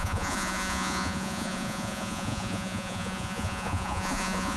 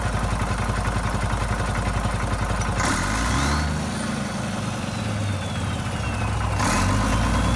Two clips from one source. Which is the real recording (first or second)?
second